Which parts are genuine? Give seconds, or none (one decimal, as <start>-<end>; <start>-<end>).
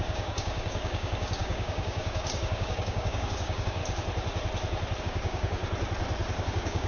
3.8-5.0; 5.6-6.5